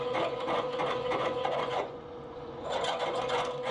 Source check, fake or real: fake